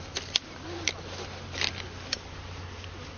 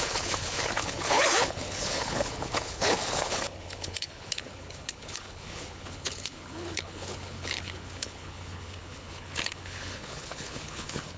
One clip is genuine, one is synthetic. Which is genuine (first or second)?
first